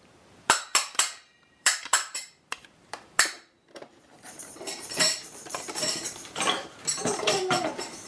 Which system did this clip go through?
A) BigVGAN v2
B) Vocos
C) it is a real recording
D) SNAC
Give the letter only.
A